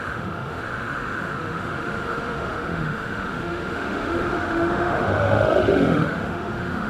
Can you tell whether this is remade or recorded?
remade